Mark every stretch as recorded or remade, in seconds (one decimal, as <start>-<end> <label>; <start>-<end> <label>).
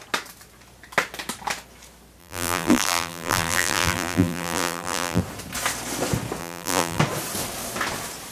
0.0-2.2 recorded; 2.2-5.2 remade; 5.2-6.4 recorded; 6.4-7.0 remade; 7.0-8.3 recorded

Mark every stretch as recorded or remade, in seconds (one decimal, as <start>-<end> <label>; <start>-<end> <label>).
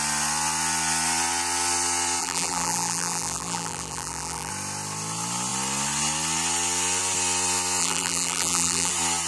0.0-2.2 recorded; 2.2-4.5 remade; 4.5-7.8 recorded; 7.8-8.9 remade; 8.9-9.3 recorded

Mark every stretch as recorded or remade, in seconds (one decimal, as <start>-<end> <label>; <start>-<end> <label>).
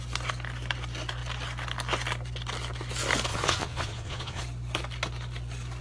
0.0-3.3 recorded; 3.3-4.4 remade; 4.4-5.8 recorded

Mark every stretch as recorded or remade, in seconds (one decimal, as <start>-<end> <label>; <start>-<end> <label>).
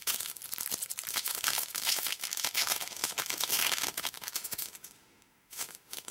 0.0-0.4 remade; 0.4-1.1 recorded; 1.1-6.1 remade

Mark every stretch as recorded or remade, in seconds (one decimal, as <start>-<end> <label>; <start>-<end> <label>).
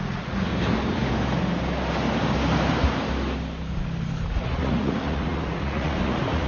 0.0-0.5 remade; 0.5-4.4 recorded; 4.4-6.5 remade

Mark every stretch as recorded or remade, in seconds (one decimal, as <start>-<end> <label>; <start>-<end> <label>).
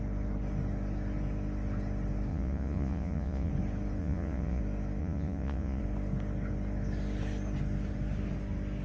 0.0-2.3 recorded; 2.3-3.5 remade; 3.5-4.0 recorded; 4.0-4.6 remade; 4.6-5.0 recorded; 5.0-5.8 remade; 5.8-8.8 recorded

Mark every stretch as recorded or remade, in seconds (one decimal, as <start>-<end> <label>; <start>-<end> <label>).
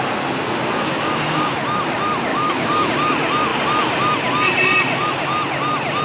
0.0-2.3 recorded; 2.3-2.9 remade; 2.9-6.0 recorded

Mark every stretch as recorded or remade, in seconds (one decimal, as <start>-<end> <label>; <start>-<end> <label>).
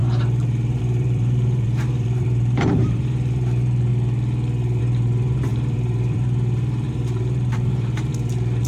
0.0-3.9 remade; 3.9-4.8 recorded; 4.8-8.7 remade